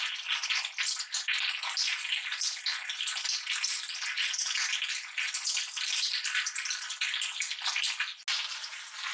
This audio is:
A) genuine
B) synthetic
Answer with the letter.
A